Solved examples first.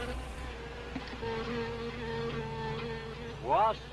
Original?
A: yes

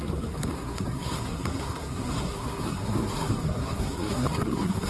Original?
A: no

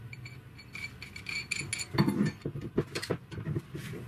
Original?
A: yes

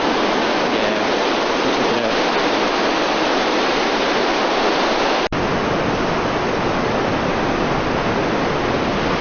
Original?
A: yes